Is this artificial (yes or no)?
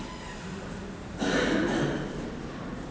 no